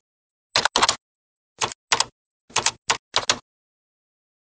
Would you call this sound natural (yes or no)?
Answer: yes